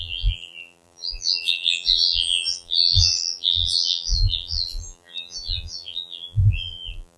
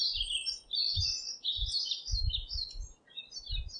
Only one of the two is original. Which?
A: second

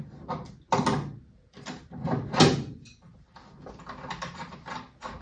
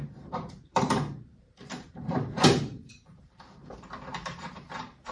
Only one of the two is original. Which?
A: first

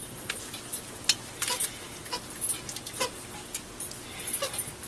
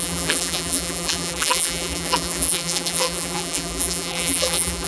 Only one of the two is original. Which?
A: first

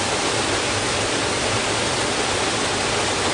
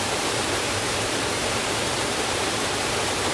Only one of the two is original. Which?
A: first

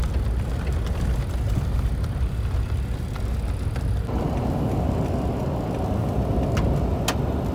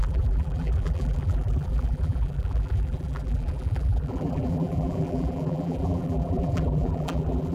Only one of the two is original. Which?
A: first